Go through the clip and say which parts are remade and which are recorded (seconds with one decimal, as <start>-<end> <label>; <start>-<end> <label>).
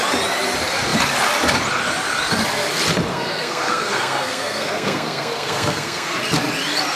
0.0-3.1 recorded; 3.1-6.2 remade; 6.2-7.0 recorded